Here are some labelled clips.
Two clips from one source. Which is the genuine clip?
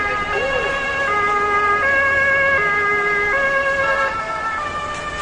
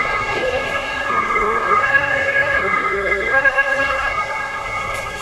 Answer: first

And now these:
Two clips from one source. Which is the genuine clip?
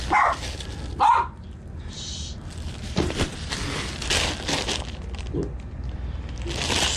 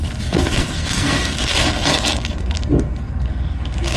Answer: first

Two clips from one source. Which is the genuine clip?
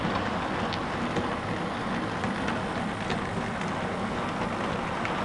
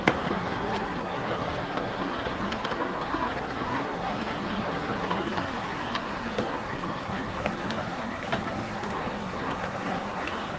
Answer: first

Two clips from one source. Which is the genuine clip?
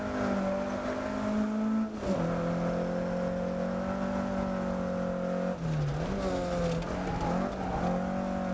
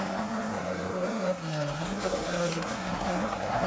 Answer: first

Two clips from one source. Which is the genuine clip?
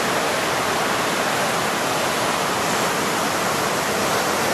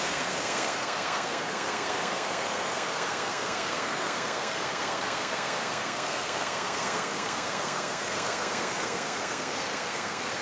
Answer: first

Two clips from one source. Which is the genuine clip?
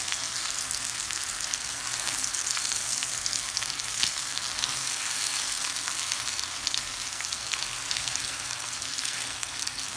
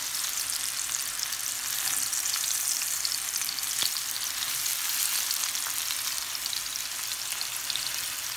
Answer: second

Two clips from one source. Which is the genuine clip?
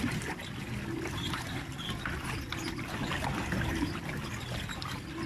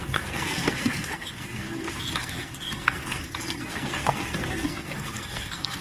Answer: first